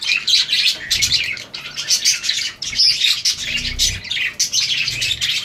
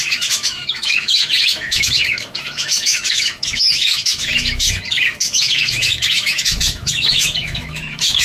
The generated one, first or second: second